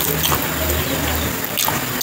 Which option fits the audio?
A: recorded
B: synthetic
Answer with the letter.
A